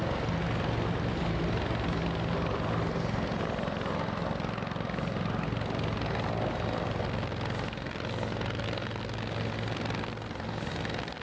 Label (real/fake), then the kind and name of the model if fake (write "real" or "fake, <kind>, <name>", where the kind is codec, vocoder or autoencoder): real